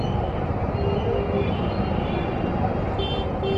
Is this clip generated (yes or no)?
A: no